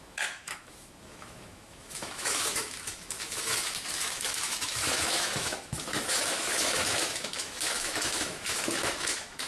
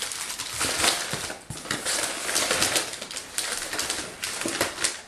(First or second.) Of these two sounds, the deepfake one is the first